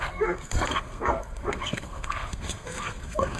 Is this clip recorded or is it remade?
remade